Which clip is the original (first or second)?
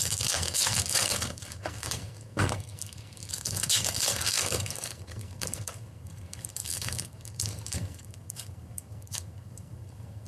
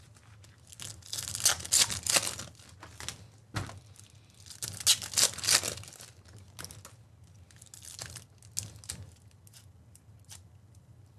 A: second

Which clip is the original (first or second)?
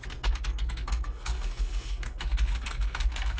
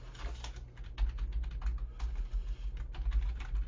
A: second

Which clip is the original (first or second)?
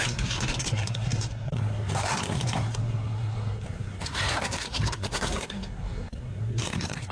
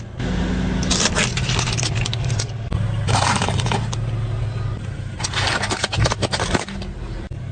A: second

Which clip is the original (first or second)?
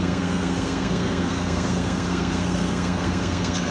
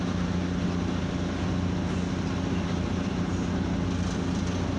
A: second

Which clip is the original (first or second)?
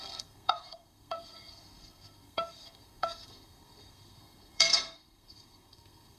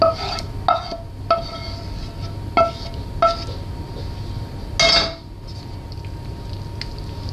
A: second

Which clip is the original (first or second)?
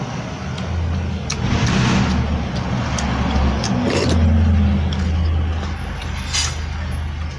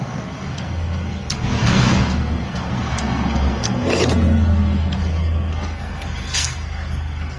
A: first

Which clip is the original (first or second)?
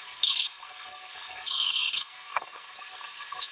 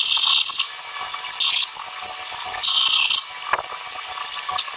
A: second